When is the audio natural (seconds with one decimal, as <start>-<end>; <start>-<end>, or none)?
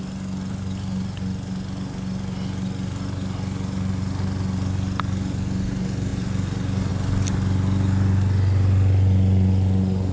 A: 0.0-10.1